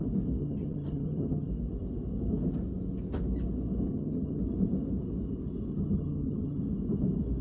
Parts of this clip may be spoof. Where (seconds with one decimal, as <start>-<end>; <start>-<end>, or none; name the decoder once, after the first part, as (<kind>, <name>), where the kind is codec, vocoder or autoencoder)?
0.4-1.5 (vocoder, HiFi-GAN); 3.9-4.4; 5.7-6.6